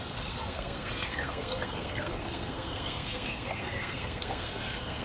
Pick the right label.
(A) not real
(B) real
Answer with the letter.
A